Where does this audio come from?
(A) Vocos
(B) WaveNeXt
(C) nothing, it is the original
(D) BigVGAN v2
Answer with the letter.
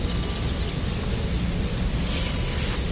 C